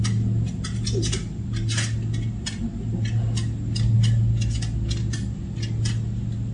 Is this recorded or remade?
recorded